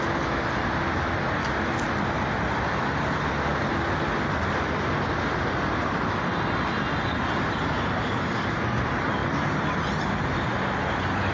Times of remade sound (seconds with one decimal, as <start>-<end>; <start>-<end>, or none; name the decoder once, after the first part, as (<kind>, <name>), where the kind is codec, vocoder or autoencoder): none